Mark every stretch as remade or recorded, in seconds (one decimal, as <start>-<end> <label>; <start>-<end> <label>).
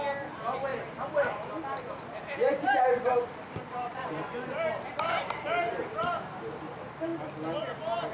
0.0-3.8 recorded; 3.8-4.5 remade; 4.5-8.1 recorded